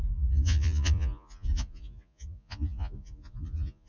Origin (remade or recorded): remade